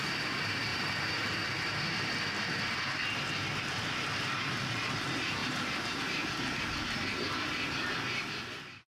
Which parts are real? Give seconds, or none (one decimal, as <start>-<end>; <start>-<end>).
0.0-5.4; 6.0-8.9